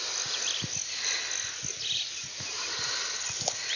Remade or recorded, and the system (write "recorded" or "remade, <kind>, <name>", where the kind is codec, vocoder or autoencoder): recorded